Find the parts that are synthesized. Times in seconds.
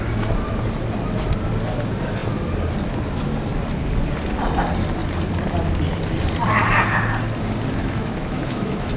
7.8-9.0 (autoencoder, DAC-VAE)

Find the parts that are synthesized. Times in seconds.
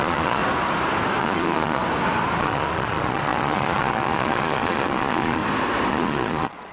0.0-0.4 (vocoder, Vocos); 1.2-1.8; 2.4-5.4; 5.9-6.7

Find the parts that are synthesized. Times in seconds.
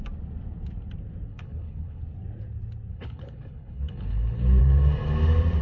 1.3-2.0 (codec, HILCodec); 2.9-4.6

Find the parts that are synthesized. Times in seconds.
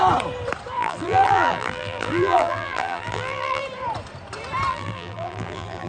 0.8-3.6 (vocoder, BigVGAN v2); 4.7-5.9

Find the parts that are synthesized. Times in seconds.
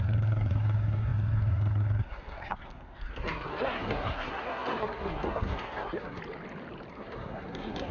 0.0-6.2 (codec, SNAC); 6.9-7.9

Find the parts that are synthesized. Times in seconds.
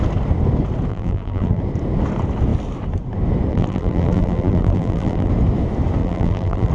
0.9-1.6 (vocoder, BigVGAN v2); 3.5-5.3; 6.0-6.7